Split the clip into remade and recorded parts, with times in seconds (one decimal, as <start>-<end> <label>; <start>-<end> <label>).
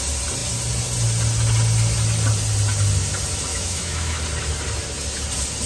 0.0-3.5 recorded; 3.5-4.2 remade; 4.2-5.7 recorded